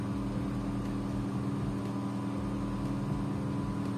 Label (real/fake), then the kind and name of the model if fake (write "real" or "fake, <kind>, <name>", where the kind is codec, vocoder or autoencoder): real